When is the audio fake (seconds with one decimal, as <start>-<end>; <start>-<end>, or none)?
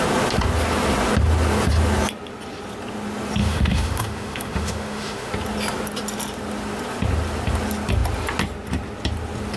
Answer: 3.4-5.3